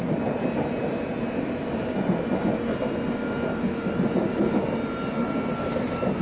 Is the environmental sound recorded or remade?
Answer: recorded